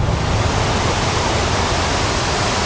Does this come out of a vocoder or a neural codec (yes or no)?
no